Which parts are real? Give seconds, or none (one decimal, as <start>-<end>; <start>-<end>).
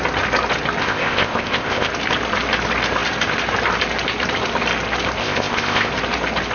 0.0-0.8; 1.9-5.2; 5.9-6.5